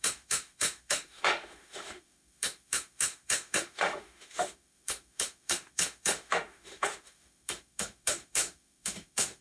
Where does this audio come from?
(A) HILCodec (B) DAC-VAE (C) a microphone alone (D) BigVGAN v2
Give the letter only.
B